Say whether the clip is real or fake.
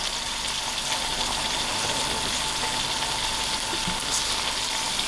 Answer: real